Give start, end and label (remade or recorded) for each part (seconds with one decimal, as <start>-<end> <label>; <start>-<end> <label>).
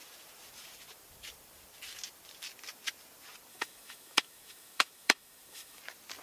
0.0-3.5 recorded; 3.5-5.8 remade; 5.8-6.2 recorded